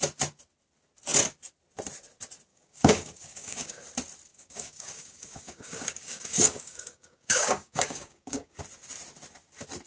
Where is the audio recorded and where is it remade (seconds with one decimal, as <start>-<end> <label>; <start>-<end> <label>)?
0.0-2.5 recorded; 2.5-3.8 remade; 3.8-4.3 recorded; 4.3-8.6 remade; 8.6-9.9 recorded